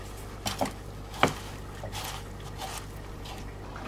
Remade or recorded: recorded